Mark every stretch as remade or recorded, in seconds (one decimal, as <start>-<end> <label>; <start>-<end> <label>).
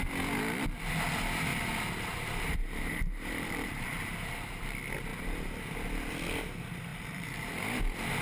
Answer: 0.0-1.5 recorded; 1.5-3.9 remade; 3.9-6.9 recorded; 6.9-7.5 remade; 7.5-8.2 recorded